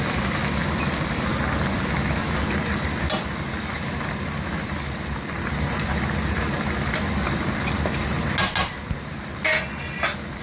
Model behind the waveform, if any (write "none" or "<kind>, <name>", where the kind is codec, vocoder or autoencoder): none